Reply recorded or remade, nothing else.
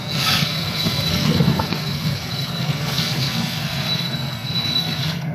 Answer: remade